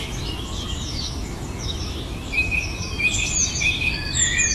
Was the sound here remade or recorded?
remade